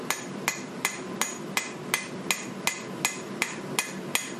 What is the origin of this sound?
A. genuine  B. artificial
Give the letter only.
A